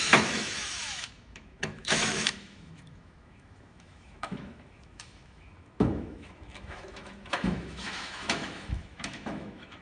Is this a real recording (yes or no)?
no